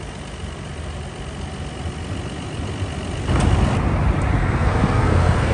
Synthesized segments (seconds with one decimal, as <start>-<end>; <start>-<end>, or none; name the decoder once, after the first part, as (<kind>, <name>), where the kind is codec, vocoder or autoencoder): 4.4-5.5 (codec, SNAC)